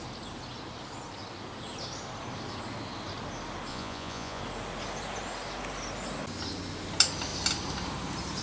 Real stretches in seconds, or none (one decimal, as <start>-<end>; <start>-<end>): 0.0-3.7; 4.4-8.4